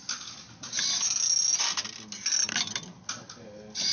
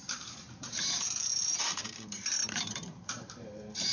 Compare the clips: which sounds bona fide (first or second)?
first